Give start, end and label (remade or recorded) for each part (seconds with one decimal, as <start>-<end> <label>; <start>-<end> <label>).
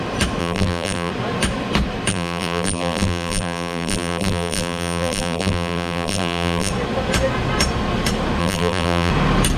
0.0-0.4 recorded; 0.4-1.1 remade; 1.1-2.1 recorded; 2.1-6.7 remade; 6.7-8.4 recorded; 8.4-9.1 remade; 9.1-9.6 recorded